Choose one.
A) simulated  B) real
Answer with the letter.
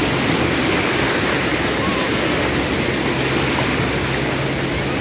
B